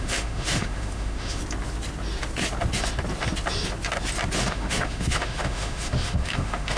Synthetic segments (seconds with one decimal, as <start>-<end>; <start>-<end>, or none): 0.0-1.4; 4.4-6.8